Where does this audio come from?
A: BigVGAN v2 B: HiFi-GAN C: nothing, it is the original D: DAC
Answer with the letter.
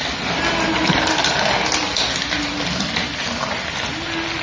C